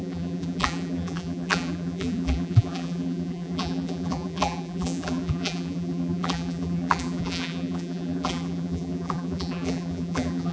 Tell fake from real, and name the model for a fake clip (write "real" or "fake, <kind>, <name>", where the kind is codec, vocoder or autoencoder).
fake, vocoder, BigVGAN v2